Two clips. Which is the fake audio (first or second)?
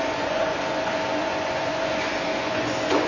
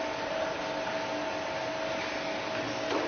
first